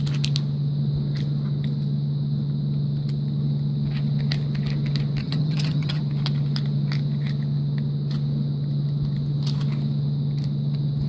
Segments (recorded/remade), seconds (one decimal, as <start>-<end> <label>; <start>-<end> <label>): 0.0-5.2 recorded; 5.2-6.0 remade; 6.0-11.1 recorded